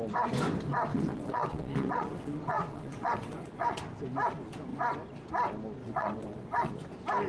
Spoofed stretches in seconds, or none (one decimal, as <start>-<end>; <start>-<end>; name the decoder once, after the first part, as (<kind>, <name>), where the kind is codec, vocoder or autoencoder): 0.9-3.8 (vocoder, WaveNeXt); 5.8-6.7